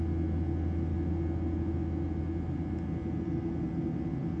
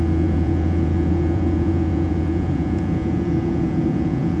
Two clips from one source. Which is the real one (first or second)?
first